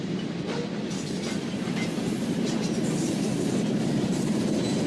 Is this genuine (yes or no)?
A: yes